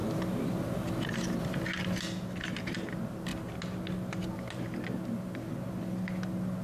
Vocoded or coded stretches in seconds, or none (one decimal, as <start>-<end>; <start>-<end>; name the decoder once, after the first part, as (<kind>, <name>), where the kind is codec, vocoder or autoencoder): none